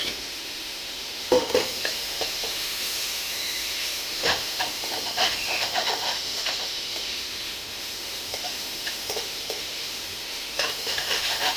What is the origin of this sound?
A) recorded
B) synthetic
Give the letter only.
B